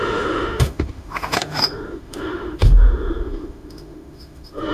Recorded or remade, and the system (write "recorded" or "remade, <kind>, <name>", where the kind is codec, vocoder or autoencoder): remade, autoencoder, DAC-VAE